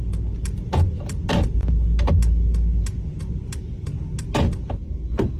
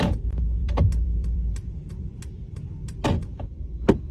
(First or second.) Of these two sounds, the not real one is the second